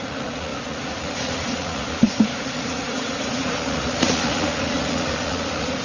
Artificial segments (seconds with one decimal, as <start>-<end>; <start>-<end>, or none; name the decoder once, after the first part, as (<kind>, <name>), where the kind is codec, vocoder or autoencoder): 0.0-5.8 (vocoder, Vocos)